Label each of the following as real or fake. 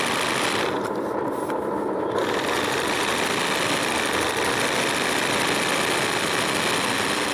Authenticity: real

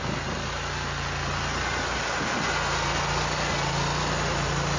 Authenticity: real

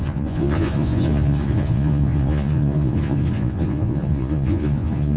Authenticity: fake